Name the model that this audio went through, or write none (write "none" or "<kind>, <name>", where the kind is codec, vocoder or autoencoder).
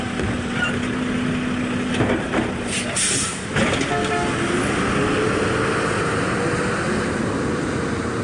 none